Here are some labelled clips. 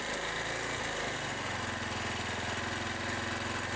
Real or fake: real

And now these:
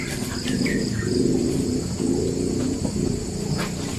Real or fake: real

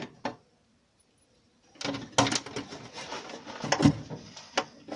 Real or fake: real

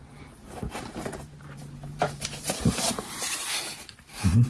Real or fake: fake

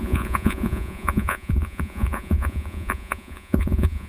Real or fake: fake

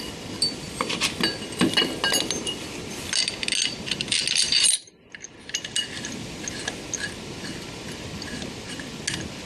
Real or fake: real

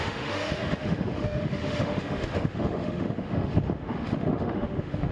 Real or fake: fake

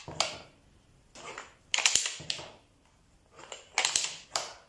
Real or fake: real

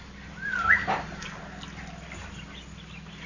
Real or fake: real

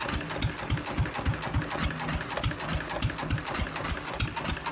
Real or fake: real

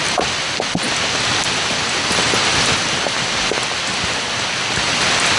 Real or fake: real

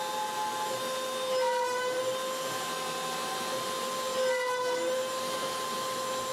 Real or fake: real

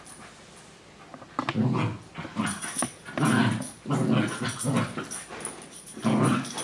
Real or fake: real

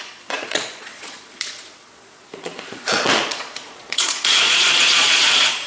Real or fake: fake